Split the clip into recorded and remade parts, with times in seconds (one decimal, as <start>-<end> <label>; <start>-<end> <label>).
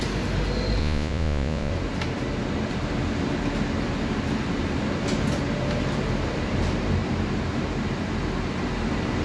0.0-0.8 recorded; 0.8-1.7 remade; 1.7-9.2 recorded